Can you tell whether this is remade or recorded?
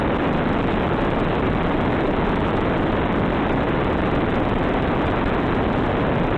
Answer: recorded